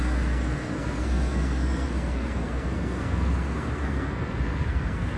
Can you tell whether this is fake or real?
fake